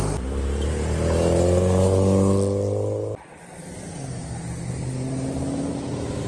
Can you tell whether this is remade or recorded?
recorded